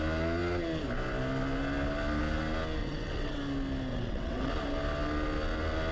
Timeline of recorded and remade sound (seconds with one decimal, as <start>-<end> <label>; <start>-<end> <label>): 0.0-2.8 recorded; 2.8-3.4 remade; 3.4-3.9 recorded; 3.9-4.5 remade; 4.5-5.9 recorded